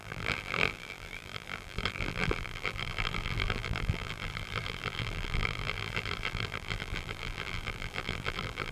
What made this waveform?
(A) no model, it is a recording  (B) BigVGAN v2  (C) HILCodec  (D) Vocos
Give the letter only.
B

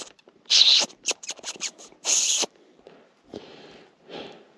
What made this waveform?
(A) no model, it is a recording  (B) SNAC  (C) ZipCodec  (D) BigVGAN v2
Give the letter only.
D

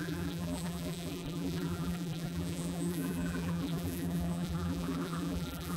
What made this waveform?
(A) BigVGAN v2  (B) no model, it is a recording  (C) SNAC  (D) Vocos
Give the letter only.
A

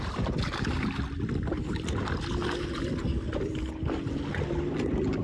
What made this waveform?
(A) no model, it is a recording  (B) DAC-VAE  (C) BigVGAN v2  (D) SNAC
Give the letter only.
A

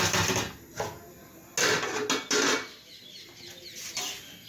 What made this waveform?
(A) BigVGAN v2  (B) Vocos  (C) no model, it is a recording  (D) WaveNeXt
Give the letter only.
C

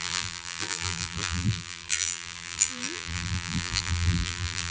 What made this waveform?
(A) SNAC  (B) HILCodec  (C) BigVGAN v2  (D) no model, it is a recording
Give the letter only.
C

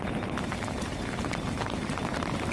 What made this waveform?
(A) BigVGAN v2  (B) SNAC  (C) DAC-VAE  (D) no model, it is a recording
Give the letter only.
A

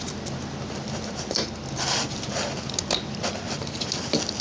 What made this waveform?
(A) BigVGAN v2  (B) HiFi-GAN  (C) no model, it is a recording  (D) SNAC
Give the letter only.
C